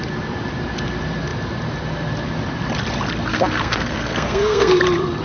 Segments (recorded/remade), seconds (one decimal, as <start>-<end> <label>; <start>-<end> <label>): 0.0-3.3 recorded; 3.3-4.8 remade; 4.8-5.2 recorded